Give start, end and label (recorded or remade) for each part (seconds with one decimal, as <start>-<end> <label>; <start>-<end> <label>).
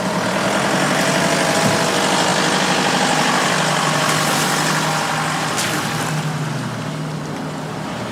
0.0-8.1 recorded